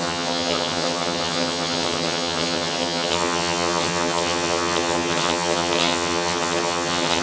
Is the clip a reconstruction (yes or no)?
yes